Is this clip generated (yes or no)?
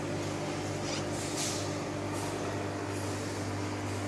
no